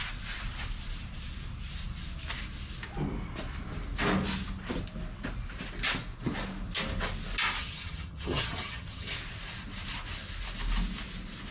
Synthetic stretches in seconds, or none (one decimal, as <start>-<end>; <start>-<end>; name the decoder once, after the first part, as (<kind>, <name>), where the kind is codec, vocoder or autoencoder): 7.6-9.2 (vocoder, HiFi-GAN)

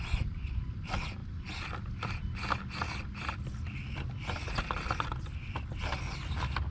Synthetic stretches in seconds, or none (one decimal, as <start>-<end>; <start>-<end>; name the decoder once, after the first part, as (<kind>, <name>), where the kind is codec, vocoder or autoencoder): none